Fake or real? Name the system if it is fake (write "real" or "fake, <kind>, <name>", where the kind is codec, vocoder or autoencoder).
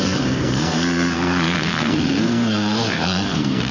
fake, codec, SNAC